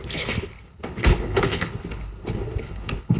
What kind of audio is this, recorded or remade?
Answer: remade